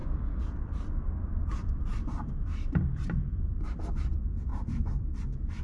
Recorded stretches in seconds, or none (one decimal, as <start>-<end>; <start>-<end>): 1.1-1.5; 4.1-4.5